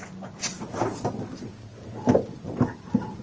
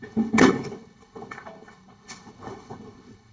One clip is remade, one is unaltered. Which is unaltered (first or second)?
first